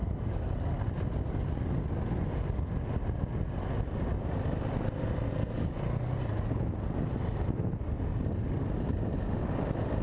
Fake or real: real